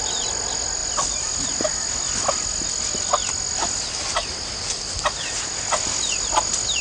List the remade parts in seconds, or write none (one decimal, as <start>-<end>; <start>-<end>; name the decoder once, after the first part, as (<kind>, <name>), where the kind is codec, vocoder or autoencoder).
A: none